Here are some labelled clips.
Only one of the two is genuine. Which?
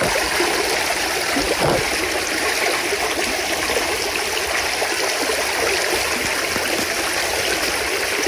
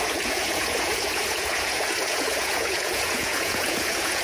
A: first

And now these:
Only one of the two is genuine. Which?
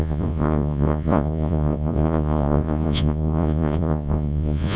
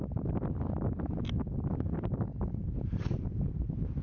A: second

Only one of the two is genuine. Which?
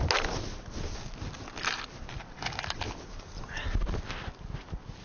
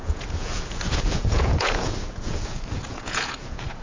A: first